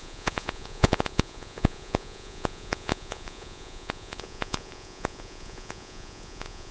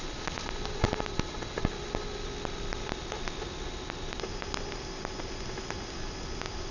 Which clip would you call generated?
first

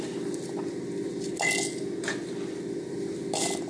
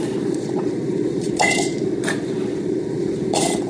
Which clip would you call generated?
second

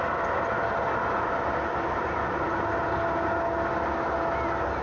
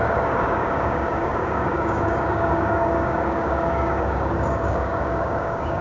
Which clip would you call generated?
second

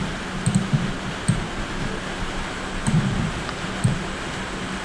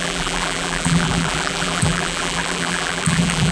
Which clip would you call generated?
second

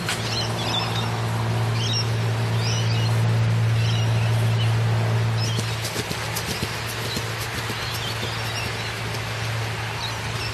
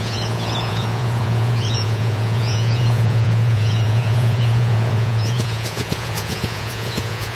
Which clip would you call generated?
second